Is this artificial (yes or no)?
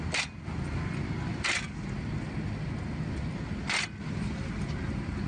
no